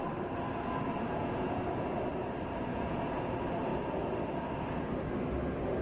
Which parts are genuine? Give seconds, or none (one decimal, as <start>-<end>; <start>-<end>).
0.0-1.1; 1.6-2.7; 3.3-5.8